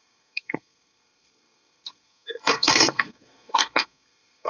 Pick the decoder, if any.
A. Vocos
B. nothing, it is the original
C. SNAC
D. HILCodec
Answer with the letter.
C